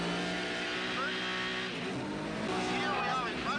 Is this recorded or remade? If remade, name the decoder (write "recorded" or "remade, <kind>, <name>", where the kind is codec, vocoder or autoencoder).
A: recorded